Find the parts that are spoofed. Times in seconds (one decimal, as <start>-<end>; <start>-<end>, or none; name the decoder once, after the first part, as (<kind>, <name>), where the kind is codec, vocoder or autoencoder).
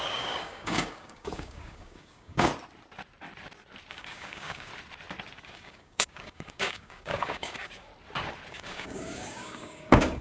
0.0-2.5 (codec, DAC); 3.9-4.7; 5.4-7.9; 8.5-10.2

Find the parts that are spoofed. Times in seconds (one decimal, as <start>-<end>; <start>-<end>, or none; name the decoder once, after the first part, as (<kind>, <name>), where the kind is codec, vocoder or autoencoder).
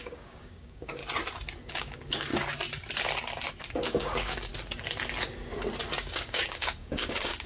0.0-1.0 (codec, DAC); 1.7-2.3; 3.6-4.5; 6.1-7.5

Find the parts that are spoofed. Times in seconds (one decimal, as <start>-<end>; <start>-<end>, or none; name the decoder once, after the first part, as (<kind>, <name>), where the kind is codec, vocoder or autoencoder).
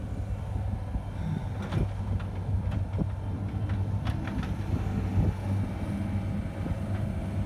none